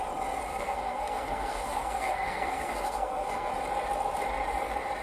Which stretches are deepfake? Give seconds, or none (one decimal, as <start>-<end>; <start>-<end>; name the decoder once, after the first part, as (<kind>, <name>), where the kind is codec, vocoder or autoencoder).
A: 0.5-3.5 (codec, SNAC)